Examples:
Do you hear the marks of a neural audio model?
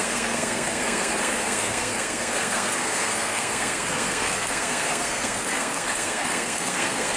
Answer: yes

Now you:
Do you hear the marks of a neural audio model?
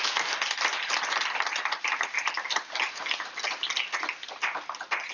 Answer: no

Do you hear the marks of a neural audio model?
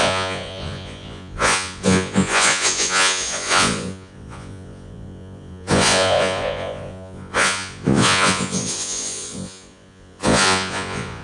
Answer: yes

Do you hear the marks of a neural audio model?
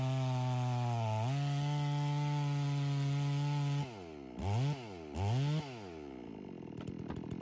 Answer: no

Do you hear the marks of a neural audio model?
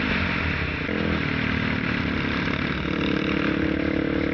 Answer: no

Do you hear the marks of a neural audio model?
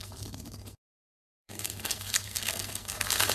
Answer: yes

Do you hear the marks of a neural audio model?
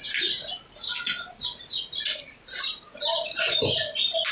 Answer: no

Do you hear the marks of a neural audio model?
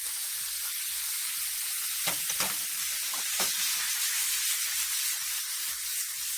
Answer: no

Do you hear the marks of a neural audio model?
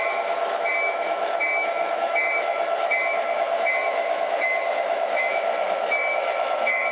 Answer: yes